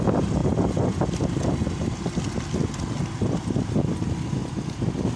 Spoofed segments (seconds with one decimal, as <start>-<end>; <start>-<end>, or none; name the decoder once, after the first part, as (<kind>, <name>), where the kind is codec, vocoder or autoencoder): 4.4-5.2 (vocoder, BigVGAN v2)